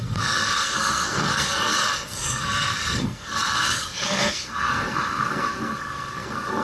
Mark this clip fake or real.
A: fake